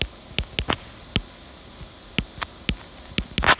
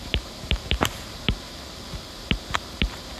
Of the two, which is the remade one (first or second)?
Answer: second